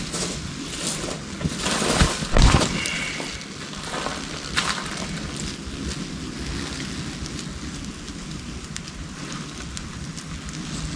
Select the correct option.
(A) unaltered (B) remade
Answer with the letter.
A